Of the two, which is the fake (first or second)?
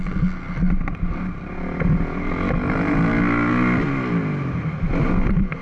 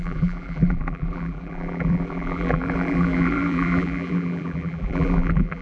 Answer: second